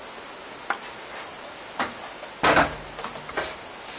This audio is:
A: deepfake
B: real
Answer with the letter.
B